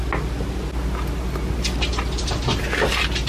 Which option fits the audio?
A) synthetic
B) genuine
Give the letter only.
B